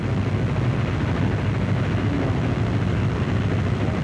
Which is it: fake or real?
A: real